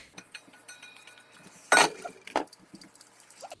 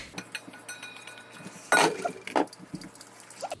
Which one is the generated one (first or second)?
first